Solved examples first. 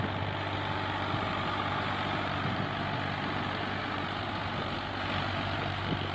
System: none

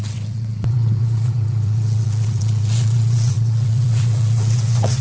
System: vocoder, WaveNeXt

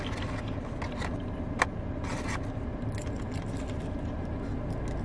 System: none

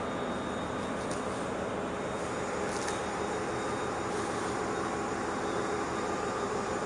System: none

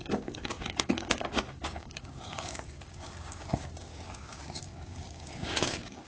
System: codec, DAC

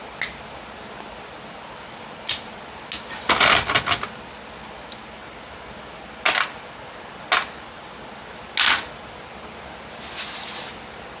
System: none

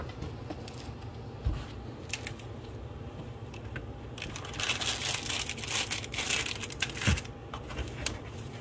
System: none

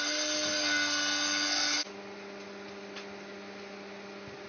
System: none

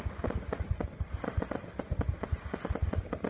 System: none